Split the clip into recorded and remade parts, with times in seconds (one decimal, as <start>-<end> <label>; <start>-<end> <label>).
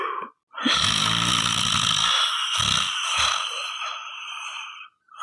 0.0-5.2 recorded